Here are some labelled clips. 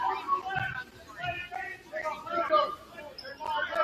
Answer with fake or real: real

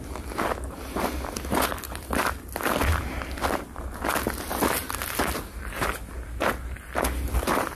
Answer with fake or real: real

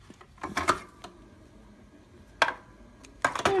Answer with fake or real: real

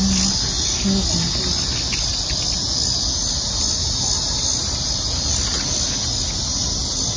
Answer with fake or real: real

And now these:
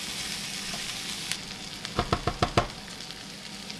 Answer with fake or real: real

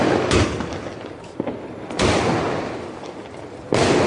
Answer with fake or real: real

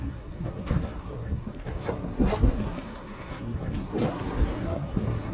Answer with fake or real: fake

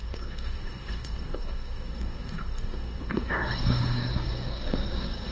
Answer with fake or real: fake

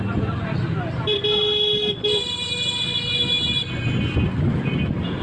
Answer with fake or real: real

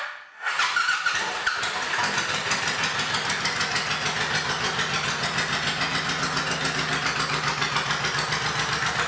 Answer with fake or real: real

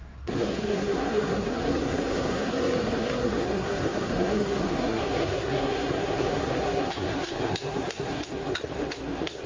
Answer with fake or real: fake